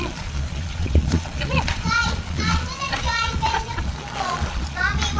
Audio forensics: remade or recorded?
remade